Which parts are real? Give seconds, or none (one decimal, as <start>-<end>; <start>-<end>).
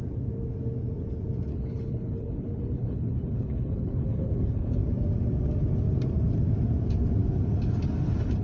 0.0-1.5; 4.8-8.4